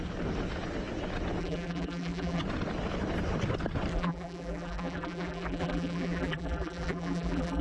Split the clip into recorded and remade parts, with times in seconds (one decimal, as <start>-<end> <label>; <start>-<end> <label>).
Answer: 0.0-1.4 recorded; 1.4-2.4 remade; 2.4-3.9 recorded; 3.9-7.6 remade